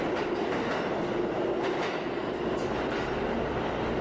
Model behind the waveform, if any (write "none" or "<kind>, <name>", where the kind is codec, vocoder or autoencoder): vocoder, BigVGAN v2